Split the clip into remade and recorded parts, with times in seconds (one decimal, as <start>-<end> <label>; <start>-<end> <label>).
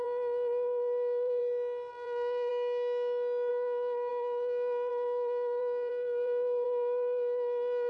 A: 0.0-1.4 remade; 1.4-1.9 recorded; 1.9-2.5 remade; 2.5-3.5 recorded; 3.5-7.9 remade